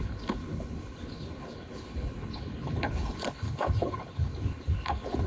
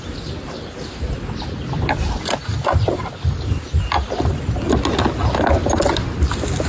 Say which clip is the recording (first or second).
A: second